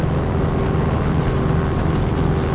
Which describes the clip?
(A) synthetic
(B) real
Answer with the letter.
B